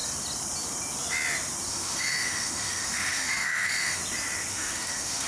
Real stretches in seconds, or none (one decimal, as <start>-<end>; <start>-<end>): 0.0-1.7; 4.0-4.5